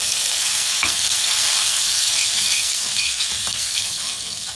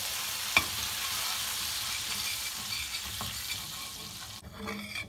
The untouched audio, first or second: second